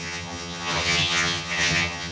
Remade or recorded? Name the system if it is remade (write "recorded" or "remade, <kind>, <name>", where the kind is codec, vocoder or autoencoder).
remade, vocoder, HiFi-GAN